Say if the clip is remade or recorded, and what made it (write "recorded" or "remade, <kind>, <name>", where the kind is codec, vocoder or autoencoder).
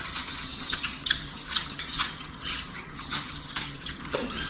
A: remade, vocoder, HiFi-GAN